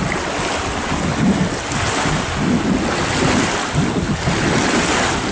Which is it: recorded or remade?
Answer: recorded